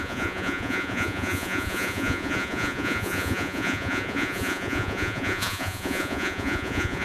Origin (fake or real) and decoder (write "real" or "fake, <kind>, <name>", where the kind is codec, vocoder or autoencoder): fake, vocoder, Vocos